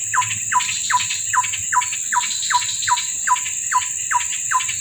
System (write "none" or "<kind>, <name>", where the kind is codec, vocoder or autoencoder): none